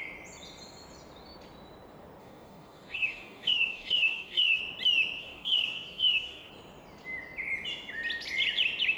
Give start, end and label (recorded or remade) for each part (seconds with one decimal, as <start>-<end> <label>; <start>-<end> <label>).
0.0-2.2 recorded; 2.2-4.6 remade; 4.6-5.2 recorded; 5.2-6.5 remade; 6.5-9.0 recorded